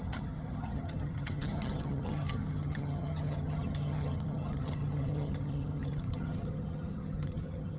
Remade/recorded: remade